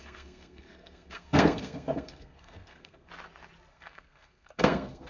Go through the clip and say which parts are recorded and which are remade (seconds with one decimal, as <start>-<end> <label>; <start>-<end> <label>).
0.0-3.1 remade; 3.1-3.7 recorded; 3.7-5.1 remade